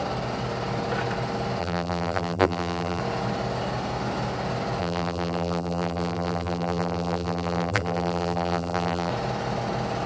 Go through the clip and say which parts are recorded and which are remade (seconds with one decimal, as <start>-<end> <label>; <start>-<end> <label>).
0.0-1.6 recorded; 1.6-3.0 remade; 3.0-4.8 recorded; 4.8-9.1 remade; 9.1-10.1 recorded